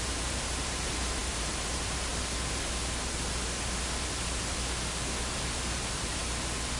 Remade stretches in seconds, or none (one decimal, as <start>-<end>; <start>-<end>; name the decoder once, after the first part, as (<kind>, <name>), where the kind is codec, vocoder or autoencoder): 0.0-2.1 (vocoder, BigVGAN v2); 5.3-6.2